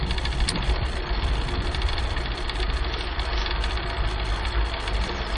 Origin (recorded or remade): recorded